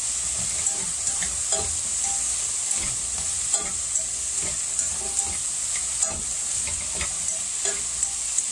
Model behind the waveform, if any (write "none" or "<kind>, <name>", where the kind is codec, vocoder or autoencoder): none